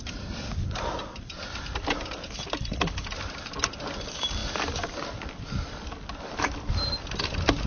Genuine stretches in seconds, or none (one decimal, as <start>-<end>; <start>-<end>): 0.0-7.7